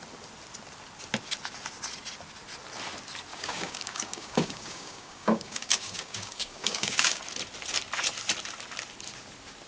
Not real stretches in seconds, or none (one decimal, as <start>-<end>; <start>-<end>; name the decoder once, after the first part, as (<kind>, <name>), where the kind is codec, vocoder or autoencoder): 3.3-7.2 (codec, DAC)